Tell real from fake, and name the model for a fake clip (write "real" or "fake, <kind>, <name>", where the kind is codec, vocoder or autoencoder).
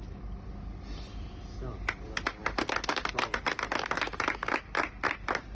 real